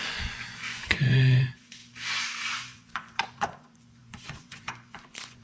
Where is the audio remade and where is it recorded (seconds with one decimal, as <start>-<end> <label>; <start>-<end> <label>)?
0.0-1.8 remade; 1.8-2.5 recorded; 2.5-5.4 remade